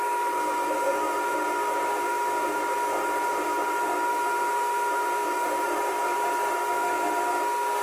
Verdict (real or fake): fake